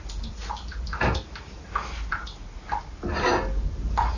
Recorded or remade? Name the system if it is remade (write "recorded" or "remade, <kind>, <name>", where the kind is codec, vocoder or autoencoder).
recorded